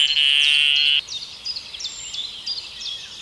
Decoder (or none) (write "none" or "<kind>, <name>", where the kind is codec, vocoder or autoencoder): none